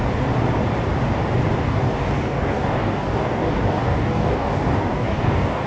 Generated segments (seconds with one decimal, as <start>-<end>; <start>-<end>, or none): 1.6-5.7

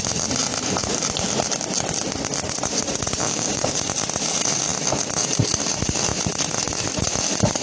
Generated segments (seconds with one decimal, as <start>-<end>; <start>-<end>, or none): 3.2-3.9